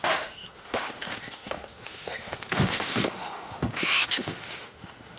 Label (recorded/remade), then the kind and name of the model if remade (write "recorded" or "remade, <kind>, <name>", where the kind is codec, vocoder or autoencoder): remade, autoencoder, DAC-VAE